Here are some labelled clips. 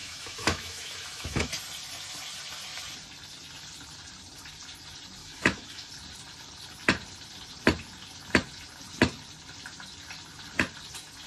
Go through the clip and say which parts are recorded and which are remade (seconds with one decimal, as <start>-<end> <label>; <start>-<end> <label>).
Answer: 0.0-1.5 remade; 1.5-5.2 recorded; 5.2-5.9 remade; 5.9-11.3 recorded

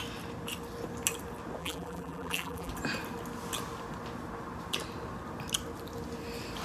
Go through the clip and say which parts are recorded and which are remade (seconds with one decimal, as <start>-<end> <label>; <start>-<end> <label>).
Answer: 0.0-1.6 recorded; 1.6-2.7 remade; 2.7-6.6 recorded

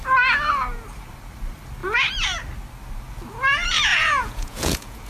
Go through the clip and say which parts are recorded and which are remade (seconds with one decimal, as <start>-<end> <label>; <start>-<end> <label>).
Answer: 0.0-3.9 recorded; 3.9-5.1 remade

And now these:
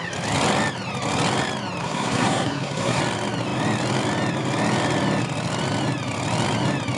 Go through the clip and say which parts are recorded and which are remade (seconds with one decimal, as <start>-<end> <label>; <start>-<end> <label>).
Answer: 0.0-1.8 recorded; 1.8-3.0 remade; 3.0-7.0 recorded